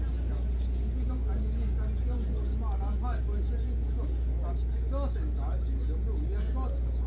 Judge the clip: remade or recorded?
recorded